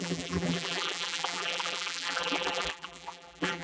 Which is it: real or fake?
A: fake